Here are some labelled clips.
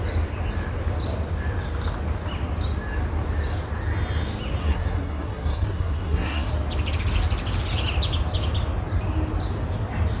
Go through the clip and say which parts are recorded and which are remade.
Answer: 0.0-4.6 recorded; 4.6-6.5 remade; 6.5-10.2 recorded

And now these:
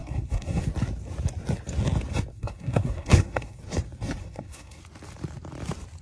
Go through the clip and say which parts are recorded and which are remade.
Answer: 0.0-0.6 remade; 0.6-2.3 recorded; 2.3-3.6 remade; 3.6-4.2 recorded; 4.2-4.8 remade; 4.8-6.0 recorded

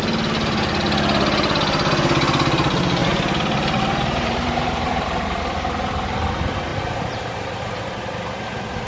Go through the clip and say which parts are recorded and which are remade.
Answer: 0.0-3.0 recorded; 3.0-6.3 remade; 6.3-6.7 recorded; 6.7-7.9 remade; 7.9-8.9 recorded

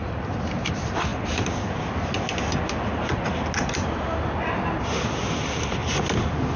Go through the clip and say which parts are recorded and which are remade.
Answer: 0.0-1.1 remade; 1.1-3.9 recorded; 3.9-5.8 remade; 5.8-6.6 recorded

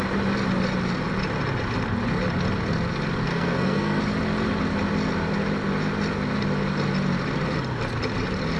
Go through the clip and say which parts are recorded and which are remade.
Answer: 0.0-3.3 recorded; 3.3-4.0 remade; 4.0-8.6 recorded